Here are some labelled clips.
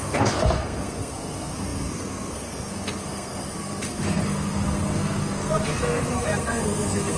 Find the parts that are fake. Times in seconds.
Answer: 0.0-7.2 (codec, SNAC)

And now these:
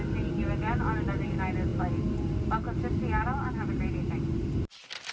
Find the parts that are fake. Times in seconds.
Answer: none

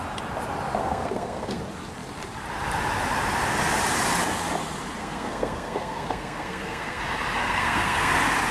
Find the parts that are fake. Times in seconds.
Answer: 0.8-1.6 (codec, SNAC); 5.0-7.0; 7.4-8.1